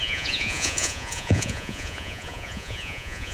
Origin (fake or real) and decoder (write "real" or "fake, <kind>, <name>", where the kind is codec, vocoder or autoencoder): fake, vocoder, Vocos